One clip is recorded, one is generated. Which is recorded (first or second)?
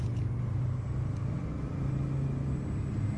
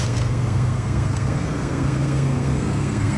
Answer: first